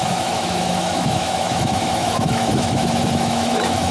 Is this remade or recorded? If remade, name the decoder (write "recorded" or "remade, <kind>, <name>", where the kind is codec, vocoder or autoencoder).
remade, autoencoder, DAC-VAE